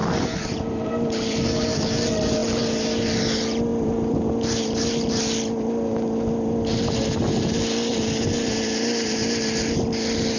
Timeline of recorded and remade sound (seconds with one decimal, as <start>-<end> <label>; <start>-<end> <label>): 0.0-10.4 recorded